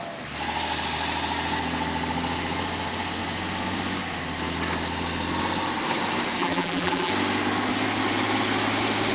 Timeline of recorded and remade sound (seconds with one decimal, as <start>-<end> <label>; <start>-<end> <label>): 0.0-6.4 recorded; 6.4-7.1 remade; 7.1-9.1 recorded